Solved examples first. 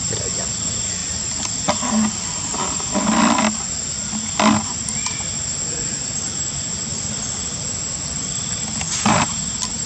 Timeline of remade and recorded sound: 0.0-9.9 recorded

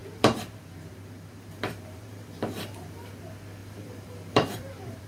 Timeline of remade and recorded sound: 0.0-3.1 remade; 3.1-3.6 recorded; 3.6-5.1 remade

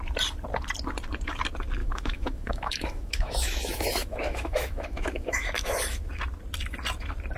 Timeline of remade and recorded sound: 0.0-1.8 recorded; 1.8-6.1 remade; 6.1-7.4 recorded

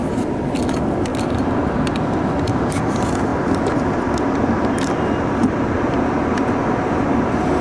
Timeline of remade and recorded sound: 0.0-0.7 remade; 0.7-1.1 recorded; 1.1-2.8 remade; 2.8-3.3 recorded; 3.3-4.7 remade; 4.7-7.6 recorded

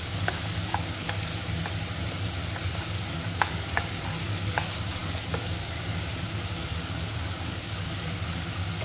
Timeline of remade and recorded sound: 0.0-1.3 remade; 1.3-2.8 recorded; 2.8-8.8 remade

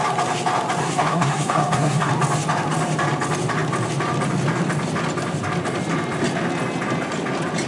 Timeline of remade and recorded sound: 0.0-0.8 recorded; 0.8-2.1 remade; 2.1-7.7 recorded

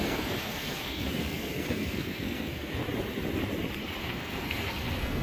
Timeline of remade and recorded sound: 0.0-2.8 remade; 2.8-4.0 recorded; 4.0-5.2 remade